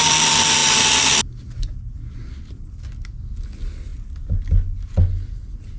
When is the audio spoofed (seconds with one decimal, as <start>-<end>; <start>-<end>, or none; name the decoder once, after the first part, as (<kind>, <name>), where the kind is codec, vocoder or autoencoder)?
none